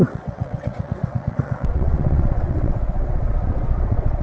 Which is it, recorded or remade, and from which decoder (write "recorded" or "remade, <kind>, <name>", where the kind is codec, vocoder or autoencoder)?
remade, vocoder, WaveNeXt